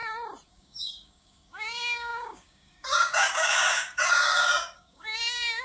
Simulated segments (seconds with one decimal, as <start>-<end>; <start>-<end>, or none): 0.5-5.6